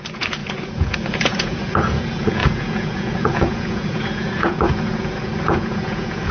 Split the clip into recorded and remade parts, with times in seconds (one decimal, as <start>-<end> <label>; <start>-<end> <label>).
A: 0.0-6.3 remade